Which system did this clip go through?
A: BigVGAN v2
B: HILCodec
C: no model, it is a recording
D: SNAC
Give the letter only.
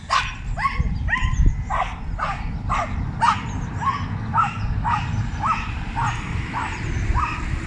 C